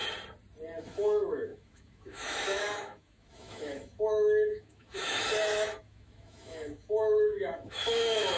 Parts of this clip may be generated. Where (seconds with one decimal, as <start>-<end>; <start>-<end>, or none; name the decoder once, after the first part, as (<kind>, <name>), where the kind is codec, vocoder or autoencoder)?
0.8-8.4 (autoencoder, DAC-VAE)